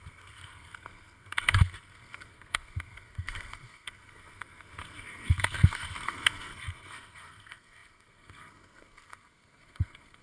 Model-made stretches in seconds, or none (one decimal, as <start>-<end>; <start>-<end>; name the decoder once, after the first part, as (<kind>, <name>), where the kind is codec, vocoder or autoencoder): 0.0-10.2 (codec, SNAC)